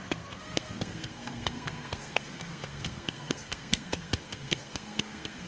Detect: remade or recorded remade